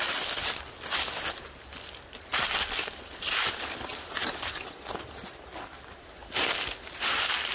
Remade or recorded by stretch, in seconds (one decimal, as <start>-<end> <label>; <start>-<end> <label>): 0.0-7.5 recorded